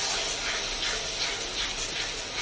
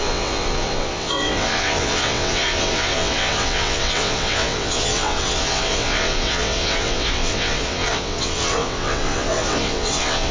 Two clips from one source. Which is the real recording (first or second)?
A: first